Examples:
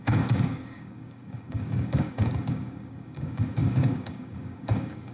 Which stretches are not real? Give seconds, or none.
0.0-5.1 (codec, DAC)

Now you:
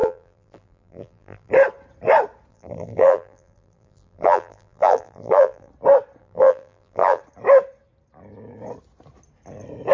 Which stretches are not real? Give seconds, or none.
0.0-1.5 (vocoder, BigVGAN v2); 2.5-5.7; 6.2-7.2

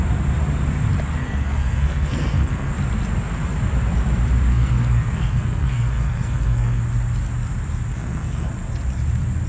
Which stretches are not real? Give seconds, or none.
1.2-2.7 (codec, SNAC); 4.5-6.8; 7.9-8.5

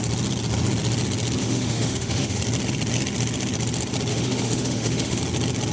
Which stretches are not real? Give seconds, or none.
1.4-2.4 (autoencoder, DAC-VAE); 4.1-5.2